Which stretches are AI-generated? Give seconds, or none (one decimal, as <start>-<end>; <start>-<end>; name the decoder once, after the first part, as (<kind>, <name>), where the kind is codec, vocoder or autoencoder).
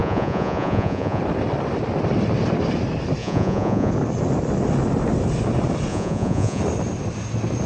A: 0.0-1.2 (vocoder, Vocos); 3.2-3.9; 5.9-6.6